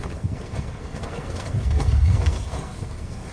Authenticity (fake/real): fake